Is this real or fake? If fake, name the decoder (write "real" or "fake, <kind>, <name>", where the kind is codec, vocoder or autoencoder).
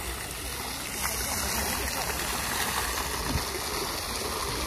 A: real